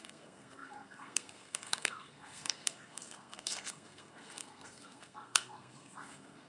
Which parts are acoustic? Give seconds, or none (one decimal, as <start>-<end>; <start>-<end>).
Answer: none